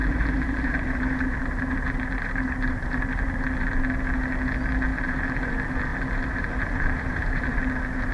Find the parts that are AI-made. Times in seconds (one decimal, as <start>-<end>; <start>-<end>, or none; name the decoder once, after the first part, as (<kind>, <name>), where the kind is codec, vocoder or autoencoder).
0.0-3.4 (vocoder, BigVGAN v2); 4.9-5.5; 5.9-7.5